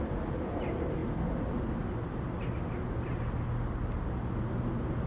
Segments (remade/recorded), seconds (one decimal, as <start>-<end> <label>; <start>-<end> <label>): 0.0-5.1 recorded

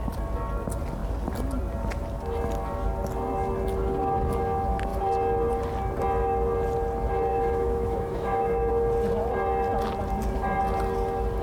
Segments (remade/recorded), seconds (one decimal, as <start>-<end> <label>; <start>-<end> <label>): 0.0-7.3 recorded; 7.3-8.7 remade; 8.7-11.4 recorded